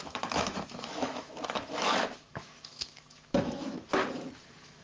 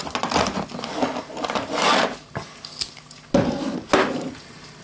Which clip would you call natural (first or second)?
second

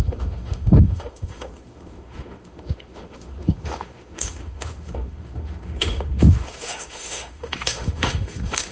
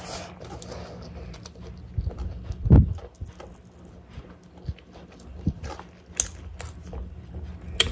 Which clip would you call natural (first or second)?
second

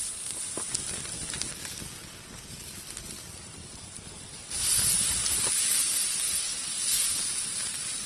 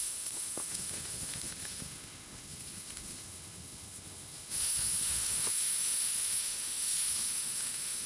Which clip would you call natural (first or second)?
first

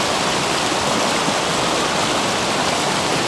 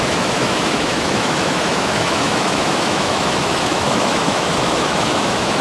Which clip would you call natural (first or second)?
first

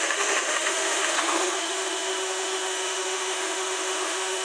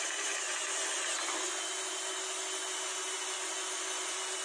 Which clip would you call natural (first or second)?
second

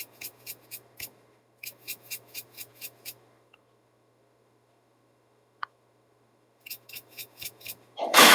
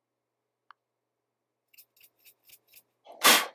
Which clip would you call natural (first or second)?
second